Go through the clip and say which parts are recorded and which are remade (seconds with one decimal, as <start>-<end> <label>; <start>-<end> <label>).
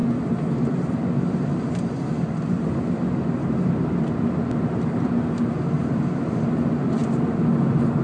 0.0-8.0 recorded